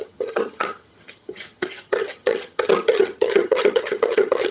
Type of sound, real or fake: fake